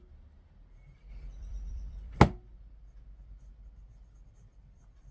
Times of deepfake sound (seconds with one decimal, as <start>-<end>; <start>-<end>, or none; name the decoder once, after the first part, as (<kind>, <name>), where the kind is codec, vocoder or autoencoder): 1.1-2.2 (vocoder, BigVGAN v2)

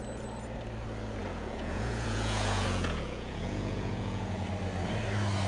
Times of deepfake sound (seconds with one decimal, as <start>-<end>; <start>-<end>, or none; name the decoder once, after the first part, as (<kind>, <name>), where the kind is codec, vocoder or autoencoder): 1.2-4.5 (vocoder, Vocos)

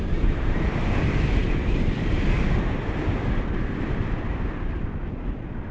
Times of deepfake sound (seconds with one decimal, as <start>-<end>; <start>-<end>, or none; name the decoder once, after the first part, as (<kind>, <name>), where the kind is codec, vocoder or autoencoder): 1.4-2.1 (vocoder, BigVGAN v2)

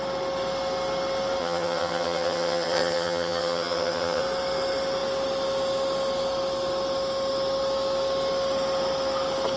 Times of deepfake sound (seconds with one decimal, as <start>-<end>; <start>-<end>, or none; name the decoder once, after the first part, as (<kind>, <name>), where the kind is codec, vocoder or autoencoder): 1.4-4.2 (vocoder, HiFi-GAN)

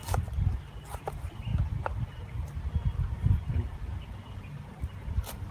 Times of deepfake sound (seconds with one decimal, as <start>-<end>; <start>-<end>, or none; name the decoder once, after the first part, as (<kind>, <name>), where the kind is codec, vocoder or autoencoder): none

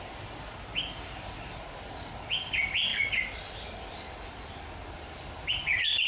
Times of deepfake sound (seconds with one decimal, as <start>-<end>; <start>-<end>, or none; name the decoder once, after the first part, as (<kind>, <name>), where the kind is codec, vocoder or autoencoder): none